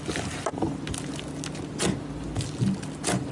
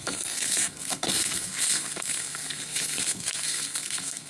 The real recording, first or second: first